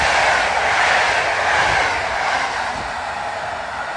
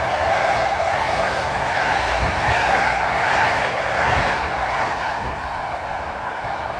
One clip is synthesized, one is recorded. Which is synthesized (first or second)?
second